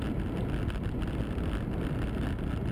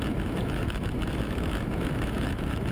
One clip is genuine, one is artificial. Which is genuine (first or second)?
first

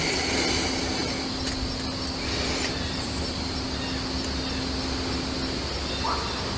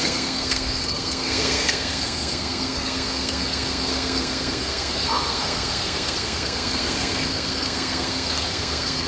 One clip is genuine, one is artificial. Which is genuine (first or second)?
first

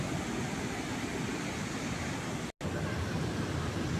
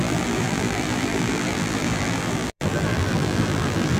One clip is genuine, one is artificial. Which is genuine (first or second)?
first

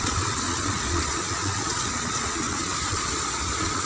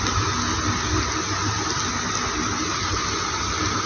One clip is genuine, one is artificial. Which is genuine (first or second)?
second